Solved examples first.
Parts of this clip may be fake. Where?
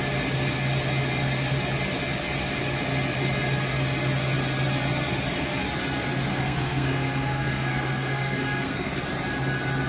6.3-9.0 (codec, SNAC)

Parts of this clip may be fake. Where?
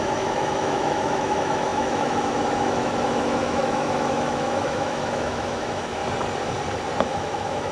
0.0-6.0 (autoencoder, DAC-VAE); 7.0-7.7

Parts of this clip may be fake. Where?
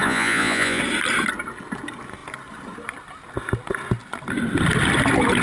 0.0-0.8 (vocoder, Vocos)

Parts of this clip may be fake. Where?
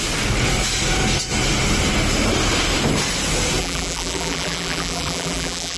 3.6-5.8 (vocoder, BigVGAN v2)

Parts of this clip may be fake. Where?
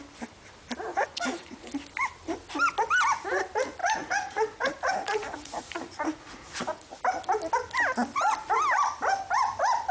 0.9-1.7 (vocoder, Vocos); 3.8-7.0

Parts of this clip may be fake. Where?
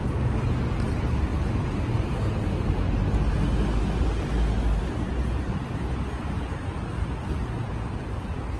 none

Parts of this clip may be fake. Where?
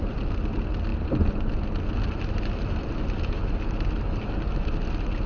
none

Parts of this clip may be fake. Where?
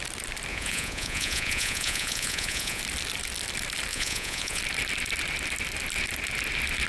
0.5-2.8 (vocoder, Vocos); 3.9-4.6